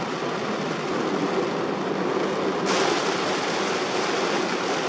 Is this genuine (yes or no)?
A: yes